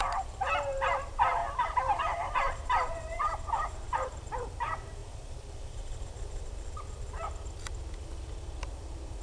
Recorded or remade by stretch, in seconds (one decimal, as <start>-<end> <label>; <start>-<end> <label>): 0.0-1.4 recorded; 1.4-4.3 remade; 4.3-5.0 recorded; 5.0-6.5 remade; 6.5-9.2 recorded